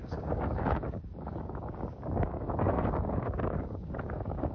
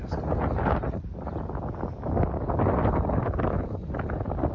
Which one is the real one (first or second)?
second